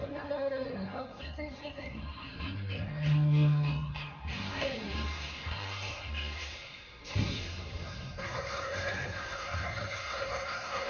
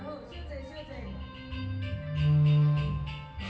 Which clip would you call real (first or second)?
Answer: second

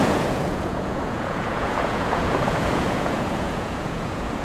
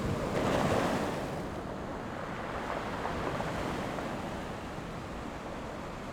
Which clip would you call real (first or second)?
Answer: second